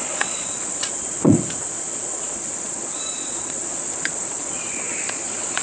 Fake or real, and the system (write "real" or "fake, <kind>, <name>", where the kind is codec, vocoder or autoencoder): fake, vocoder, Vocos